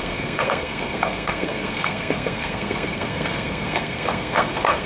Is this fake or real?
fake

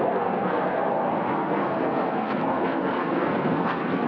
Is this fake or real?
fake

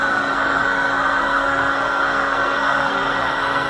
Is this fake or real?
fake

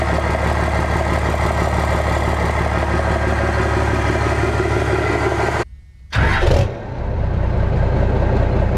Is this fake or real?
real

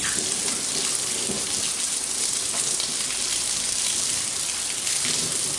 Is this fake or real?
real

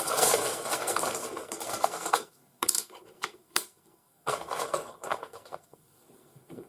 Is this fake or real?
fake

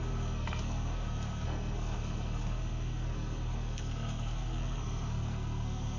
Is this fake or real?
fake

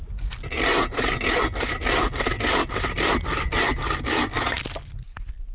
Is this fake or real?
real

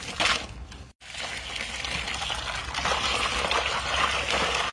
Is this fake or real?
real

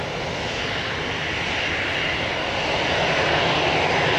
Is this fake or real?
real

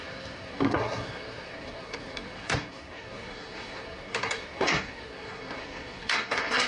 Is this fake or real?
fake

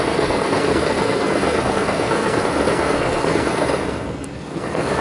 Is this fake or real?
fake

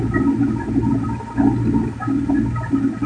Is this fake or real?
real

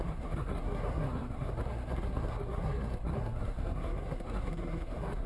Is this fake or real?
fake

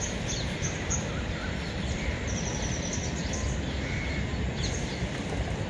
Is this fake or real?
real